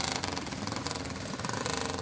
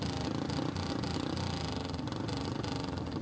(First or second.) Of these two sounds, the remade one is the first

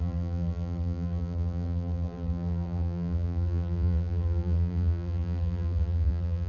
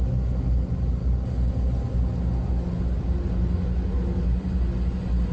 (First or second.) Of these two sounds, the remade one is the first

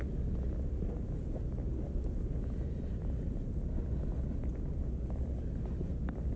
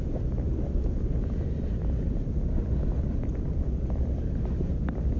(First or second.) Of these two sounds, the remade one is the second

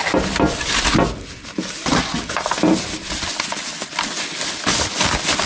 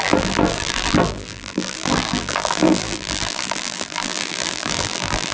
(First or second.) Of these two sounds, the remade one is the second